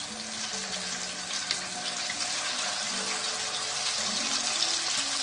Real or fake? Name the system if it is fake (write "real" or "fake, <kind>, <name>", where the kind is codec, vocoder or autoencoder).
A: real